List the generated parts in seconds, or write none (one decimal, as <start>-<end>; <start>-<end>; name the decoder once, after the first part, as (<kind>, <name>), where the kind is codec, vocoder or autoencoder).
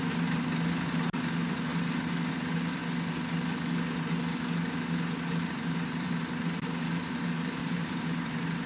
0.0-1.7 (vocoder, BigVGAN v2); 2.3-2.8; 5.4-8.7